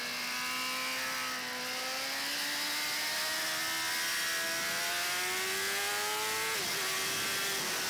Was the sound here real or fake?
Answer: real